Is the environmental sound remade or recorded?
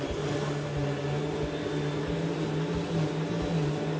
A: recorded